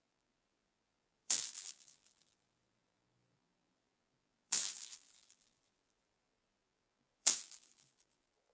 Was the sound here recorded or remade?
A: remade